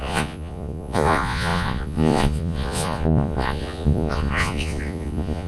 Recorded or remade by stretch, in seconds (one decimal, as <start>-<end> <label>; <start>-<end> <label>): 0.0-5.5 remade